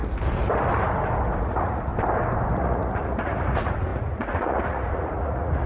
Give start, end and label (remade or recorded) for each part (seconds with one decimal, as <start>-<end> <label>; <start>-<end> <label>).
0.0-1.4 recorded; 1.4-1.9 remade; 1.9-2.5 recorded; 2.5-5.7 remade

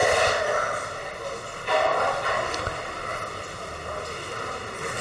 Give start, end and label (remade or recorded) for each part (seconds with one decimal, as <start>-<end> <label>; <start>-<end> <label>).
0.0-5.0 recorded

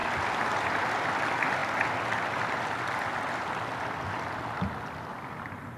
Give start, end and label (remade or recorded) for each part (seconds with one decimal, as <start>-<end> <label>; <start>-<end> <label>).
0.0-5.8 recorded

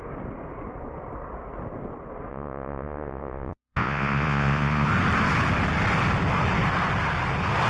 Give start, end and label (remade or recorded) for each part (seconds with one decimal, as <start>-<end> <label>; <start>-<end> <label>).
0.0-2.3 recorded; 2.3-4.9 remade; 4.9-7.7 recorded